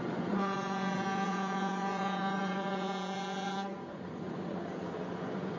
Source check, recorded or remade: remade